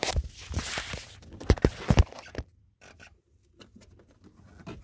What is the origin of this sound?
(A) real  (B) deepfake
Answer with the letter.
A